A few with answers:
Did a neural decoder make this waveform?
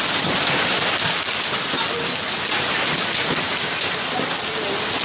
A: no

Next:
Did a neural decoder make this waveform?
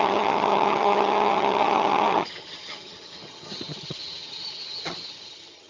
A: yes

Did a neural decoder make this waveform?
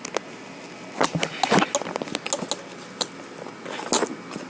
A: no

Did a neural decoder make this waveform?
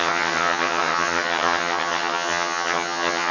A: yes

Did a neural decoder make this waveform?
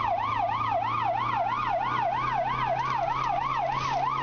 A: no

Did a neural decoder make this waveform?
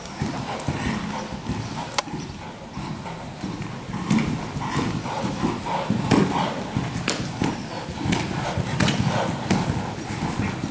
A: no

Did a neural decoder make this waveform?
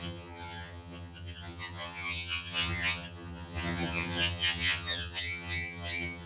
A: yes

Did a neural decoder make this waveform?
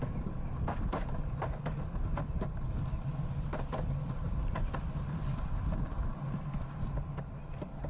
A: no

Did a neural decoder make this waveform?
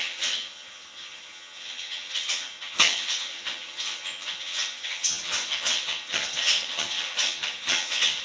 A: yes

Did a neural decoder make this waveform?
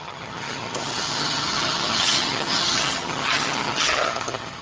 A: yes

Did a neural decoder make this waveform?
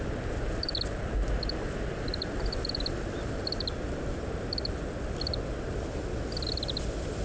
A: no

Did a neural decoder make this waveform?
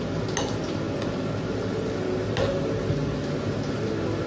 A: no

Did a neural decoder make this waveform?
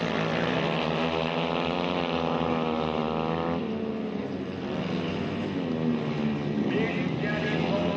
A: no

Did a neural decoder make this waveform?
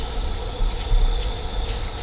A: no